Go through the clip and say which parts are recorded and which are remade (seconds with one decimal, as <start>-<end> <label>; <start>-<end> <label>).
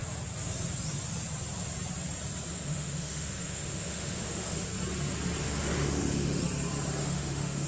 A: 0.0-2.5 recorded; 2.5-4.7 remade; 4.7-5.4 recorded; 5.4-6.4 remade; 6.4-7.0 recorded; 7.0-7.7 remade